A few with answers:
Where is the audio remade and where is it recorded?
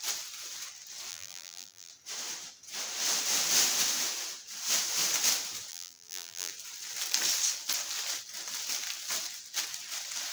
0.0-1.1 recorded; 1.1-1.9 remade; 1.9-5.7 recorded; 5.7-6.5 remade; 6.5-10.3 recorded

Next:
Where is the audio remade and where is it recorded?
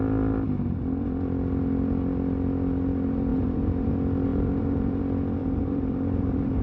0.0-3.3 recorded; 3.3-3.9 remade; 3.9-4.3 recorded; 4.3-5.0 remade; 5.0-5.4 recorded; 5.4-6.6 remade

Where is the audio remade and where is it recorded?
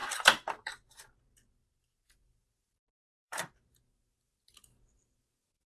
0.0-3.4 remade; 3.4-5.7 recorded